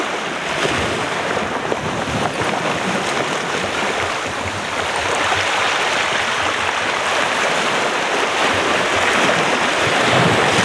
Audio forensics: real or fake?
real